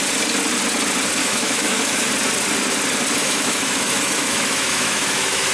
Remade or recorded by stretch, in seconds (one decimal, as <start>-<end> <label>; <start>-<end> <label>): 0.0-1.2 recorded; 1.2-2.1 remade; 2.1-3.2 recorded; 3.2-5.5 remade